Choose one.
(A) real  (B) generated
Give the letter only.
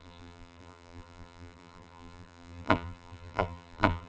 B